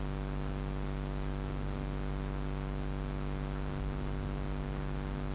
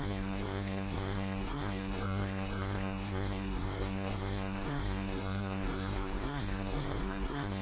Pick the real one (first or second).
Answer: first